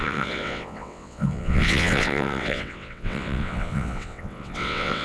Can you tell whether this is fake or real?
fake